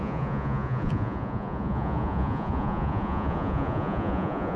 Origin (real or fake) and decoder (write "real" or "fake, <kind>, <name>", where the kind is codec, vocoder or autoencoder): fake, vocoder, Vocos